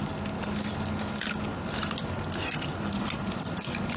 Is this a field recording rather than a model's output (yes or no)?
yes